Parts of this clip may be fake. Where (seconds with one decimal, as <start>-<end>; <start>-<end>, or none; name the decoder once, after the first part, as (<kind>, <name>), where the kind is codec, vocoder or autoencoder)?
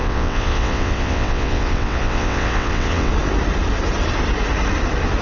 0.0-3.1 (vocoder, WaveNeXt)